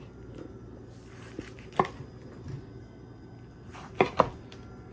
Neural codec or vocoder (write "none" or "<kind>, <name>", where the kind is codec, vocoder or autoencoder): none